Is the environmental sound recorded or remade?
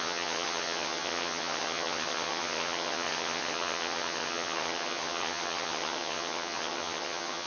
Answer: remade